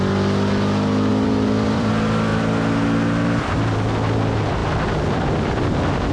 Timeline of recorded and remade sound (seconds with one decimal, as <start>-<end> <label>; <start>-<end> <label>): 0.0-1.1 recorded; 1.1-1.9 remade; 1.9-6.1 recorded